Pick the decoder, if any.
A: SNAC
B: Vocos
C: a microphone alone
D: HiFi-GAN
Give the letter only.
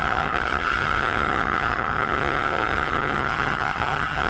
D